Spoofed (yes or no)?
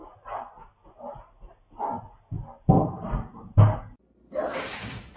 no